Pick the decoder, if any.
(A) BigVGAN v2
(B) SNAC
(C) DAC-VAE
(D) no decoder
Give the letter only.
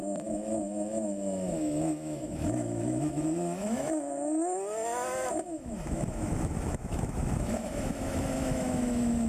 C